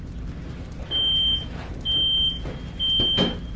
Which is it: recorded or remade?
recorded